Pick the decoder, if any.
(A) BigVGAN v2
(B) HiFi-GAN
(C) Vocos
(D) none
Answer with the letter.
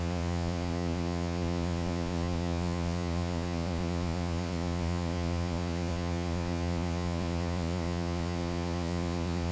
C